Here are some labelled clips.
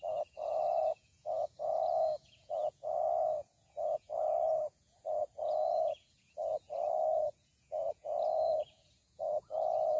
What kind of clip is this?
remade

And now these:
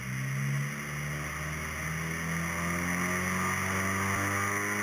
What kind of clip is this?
recorded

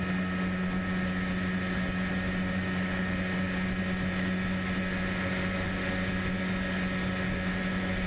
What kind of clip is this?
recorded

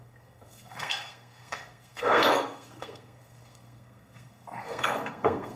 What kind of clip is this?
remade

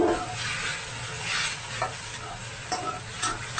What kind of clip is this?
recorded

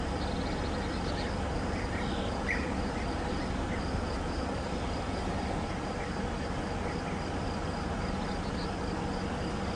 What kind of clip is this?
recorded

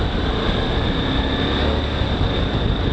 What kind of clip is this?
recorded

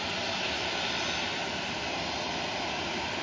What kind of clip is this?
recorded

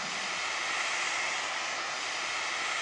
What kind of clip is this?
recorded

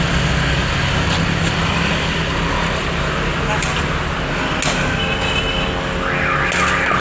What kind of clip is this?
recorded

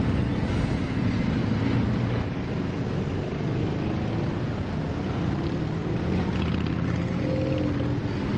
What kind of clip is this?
recorded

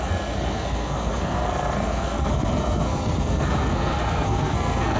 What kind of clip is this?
remade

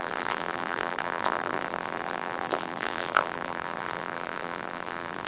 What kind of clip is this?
remade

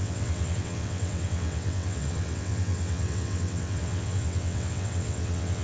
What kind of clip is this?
remade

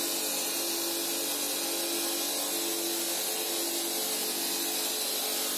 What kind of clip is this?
recorded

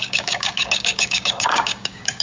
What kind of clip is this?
remade